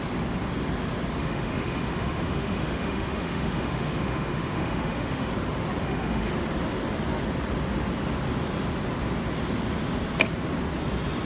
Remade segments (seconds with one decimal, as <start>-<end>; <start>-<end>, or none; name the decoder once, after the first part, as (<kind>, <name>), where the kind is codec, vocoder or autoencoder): 1.2-5.3 (autoencoder, DAC-VAE); 5.8-6.3